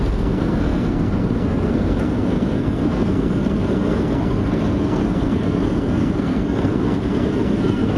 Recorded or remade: remade